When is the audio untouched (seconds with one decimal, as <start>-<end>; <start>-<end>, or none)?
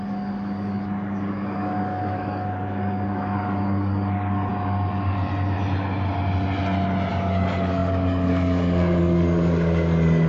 4.5-7.1